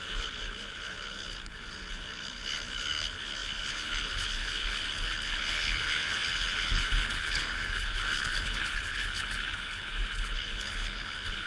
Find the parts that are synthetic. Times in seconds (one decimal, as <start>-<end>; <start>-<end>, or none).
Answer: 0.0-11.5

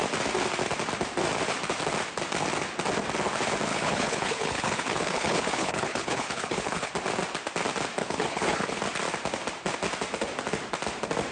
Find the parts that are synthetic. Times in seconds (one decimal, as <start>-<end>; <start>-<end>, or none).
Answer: 3.7-6.9; 8.0-8.8

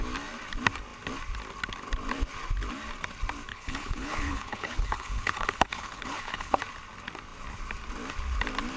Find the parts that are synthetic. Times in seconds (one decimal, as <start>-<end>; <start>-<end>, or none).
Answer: 3.5-6.6

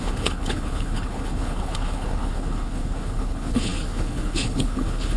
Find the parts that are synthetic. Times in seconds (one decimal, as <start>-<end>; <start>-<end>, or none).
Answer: 0.0-5.2